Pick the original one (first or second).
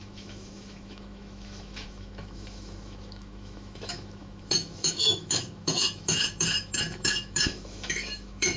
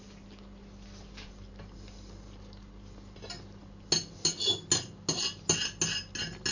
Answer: second